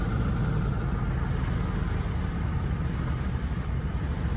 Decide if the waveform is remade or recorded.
recorded